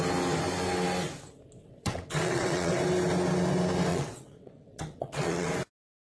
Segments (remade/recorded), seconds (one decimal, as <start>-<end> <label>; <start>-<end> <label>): 0.0-1.6 recorded; 1.6-2.8 remade; 2.8-3.9 recorded; 3.9-5.5 remade; 5.5-6.1 recorded